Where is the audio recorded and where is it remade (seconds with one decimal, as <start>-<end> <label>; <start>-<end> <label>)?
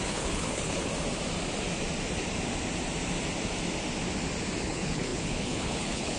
0.0-0.9 remade; 0.9-4.6 recorded; 4.6-6.2 remade